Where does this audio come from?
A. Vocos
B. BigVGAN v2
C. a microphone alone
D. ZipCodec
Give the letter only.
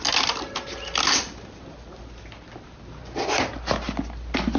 C